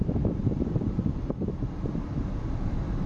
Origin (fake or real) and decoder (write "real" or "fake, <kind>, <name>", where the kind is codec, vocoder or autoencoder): fake, vocoder, BigVGAN v2